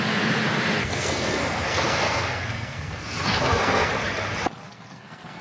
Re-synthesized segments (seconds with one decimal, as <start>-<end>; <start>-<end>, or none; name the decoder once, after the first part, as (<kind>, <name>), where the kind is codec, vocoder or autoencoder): 0.8-3.9 (codec, SNAC); 4.6-5.4